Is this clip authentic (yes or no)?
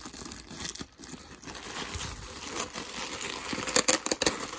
yes